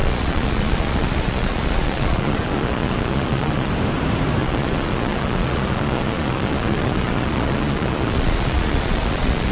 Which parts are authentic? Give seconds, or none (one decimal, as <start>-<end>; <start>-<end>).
3.7-4.4